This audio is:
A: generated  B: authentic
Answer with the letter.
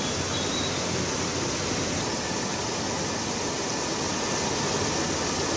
B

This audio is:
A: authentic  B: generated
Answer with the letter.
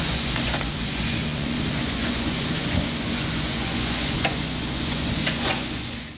B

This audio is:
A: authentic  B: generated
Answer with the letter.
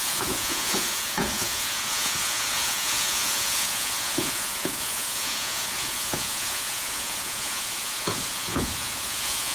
B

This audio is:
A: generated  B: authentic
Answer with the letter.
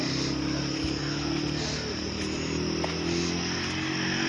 B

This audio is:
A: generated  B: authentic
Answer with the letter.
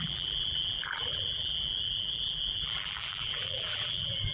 A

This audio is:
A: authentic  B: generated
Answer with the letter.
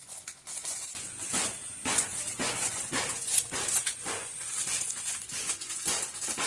B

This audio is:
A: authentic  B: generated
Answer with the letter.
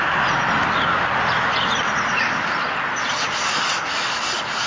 A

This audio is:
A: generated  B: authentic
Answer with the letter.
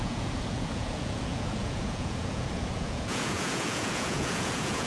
A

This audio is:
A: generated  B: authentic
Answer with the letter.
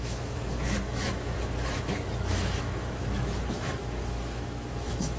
A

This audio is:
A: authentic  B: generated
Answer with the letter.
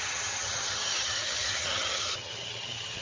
B